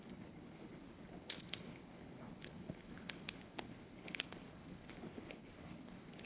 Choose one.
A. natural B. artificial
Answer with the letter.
B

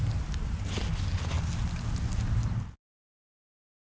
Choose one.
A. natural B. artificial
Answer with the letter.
A